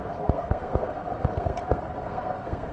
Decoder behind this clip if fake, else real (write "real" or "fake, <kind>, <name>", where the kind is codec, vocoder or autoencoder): fake, codec, SNAC